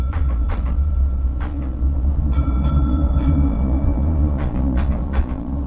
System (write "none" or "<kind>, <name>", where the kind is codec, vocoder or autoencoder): vocoder, Vocos